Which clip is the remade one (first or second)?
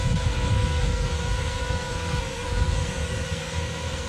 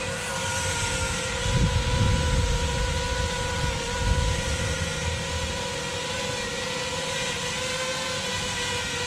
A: first